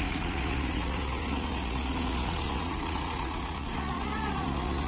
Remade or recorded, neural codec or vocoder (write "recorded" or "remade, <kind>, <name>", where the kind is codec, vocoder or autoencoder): remade, vocoder, Vocos